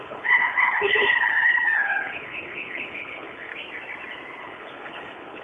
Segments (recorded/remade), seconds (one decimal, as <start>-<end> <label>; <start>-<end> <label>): 0.0-3.5 remade; 3.5-4.4 recorded; 4.4-5.4 remade